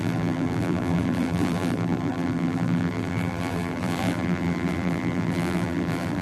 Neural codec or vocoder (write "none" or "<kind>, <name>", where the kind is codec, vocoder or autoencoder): vocoder, BigVGAN v2